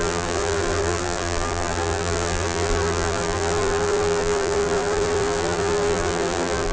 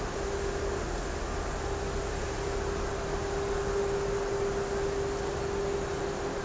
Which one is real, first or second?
second